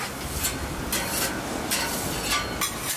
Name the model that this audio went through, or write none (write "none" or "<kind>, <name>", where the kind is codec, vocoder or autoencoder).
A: none